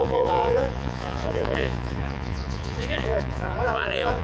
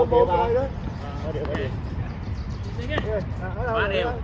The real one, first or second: second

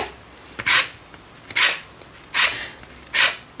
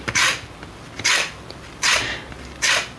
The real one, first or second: first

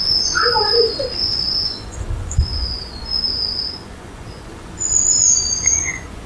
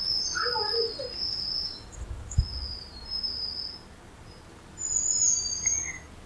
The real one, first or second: second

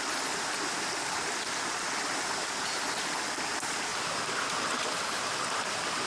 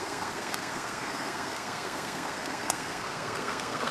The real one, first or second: first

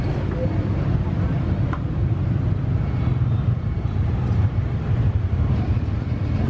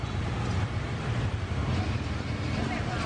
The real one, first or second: second